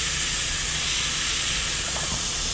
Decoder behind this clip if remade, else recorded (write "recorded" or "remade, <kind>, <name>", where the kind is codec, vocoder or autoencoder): remade, vocoder, Vocos